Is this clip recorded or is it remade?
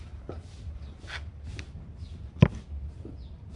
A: recorded